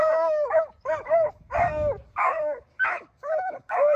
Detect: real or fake fake